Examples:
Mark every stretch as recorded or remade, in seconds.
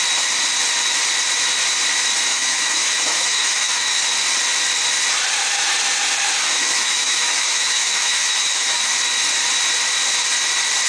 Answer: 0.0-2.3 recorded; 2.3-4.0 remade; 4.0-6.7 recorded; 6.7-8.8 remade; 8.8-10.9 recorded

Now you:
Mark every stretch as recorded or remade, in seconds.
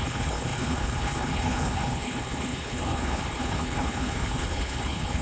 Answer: 0.0-5.2 remade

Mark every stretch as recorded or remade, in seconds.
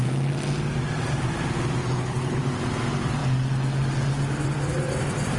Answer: 0.0-1.8 recorded; 1.8-2.4 remade; 2.4-5.4 recorded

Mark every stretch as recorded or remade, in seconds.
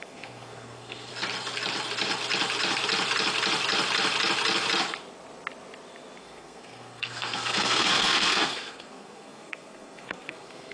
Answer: 0.0-1.1 remade; 1.1-6.2 recorded; 6.2-10.7 remade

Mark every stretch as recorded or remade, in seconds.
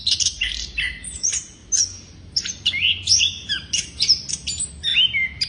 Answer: 0.0-1.6 remade; 1.6-2.3 recorded; 2.3-4.9 remade; 4.9-5.5 recorded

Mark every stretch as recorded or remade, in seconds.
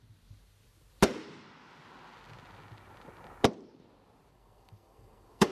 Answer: 0.0-4.3 recorded; 4.3-5.5 remade